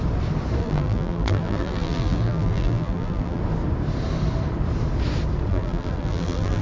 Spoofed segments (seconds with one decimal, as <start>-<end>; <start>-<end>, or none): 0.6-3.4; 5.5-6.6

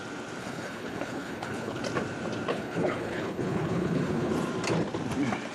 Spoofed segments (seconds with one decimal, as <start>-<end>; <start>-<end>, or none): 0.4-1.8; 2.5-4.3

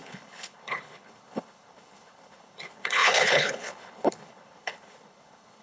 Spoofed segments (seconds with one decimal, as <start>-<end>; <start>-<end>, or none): 0.0-5.6

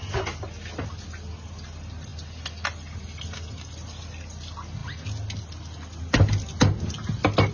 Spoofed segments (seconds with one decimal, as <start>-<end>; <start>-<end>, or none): none

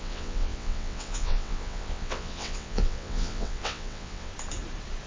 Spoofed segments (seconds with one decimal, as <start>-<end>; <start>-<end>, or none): 0.0-4.3